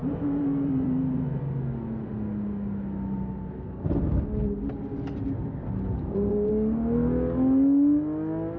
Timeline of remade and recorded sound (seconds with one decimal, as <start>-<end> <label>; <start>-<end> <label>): 0.0-1.4 remade; 1.4-5.9 recorded; 5.9-6.5 remade; 6.5-8.6 recorded